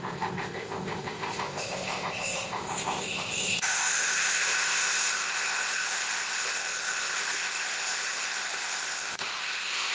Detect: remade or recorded remade